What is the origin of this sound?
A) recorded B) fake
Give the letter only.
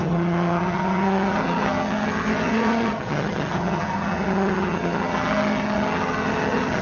B